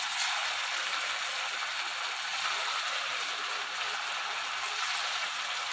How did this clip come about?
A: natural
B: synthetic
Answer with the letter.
A